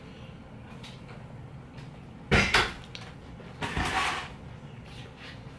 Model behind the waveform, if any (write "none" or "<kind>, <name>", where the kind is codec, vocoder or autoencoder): none